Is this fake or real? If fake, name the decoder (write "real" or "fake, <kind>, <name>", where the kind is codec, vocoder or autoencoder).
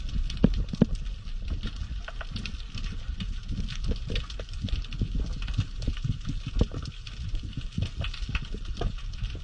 real